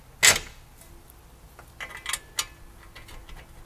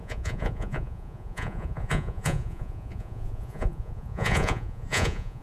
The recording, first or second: first